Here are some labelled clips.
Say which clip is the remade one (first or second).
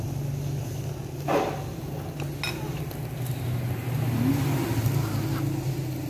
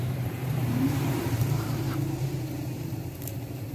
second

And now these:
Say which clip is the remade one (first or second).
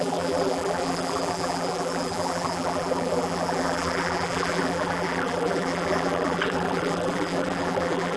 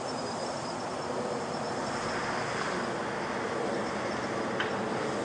first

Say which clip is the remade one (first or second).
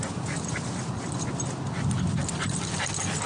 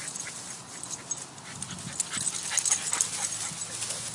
first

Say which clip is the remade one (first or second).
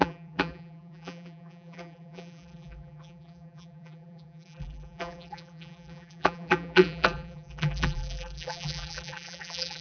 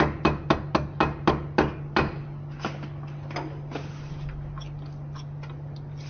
first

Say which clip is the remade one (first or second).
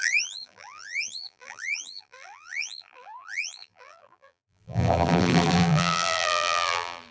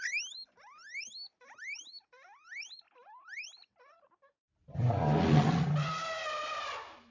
first